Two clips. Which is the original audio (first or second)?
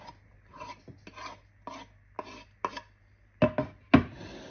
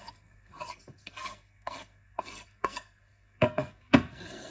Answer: first